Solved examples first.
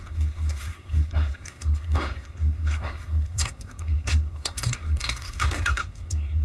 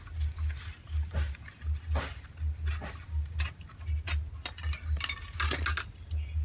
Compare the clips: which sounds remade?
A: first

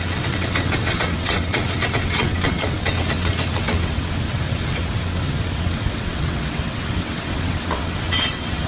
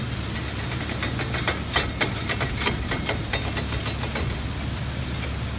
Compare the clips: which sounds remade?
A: first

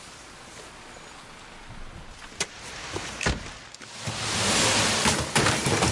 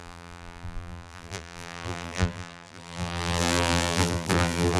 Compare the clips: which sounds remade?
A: second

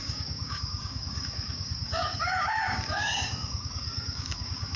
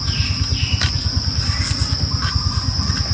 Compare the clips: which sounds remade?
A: first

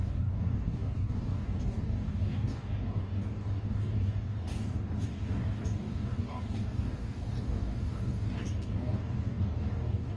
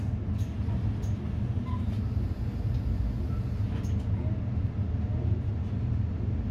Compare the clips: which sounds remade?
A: first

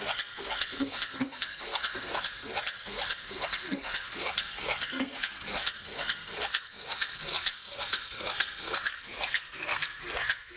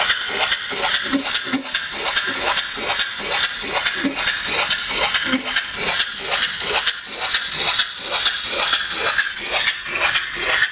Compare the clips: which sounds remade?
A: first